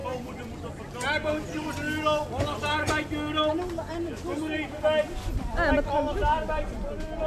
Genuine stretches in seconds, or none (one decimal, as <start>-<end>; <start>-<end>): 0.0-7.3